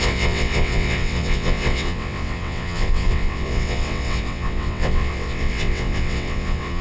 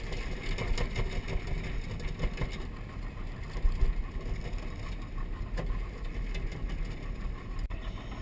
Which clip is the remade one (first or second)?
first